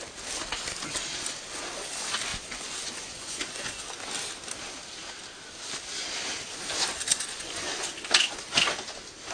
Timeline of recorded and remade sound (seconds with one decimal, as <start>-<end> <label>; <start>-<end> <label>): 0.0-2.3 recorded; 2.3-3.8 remade; 3.8-7.1 recorded; 7.1-7.8 remade; 7.8-9.3 recorded